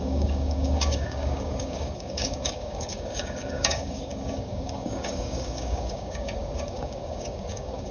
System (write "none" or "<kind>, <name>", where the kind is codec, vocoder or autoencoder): codec, DAC